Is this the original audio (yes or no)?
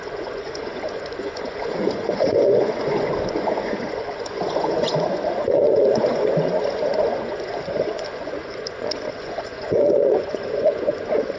no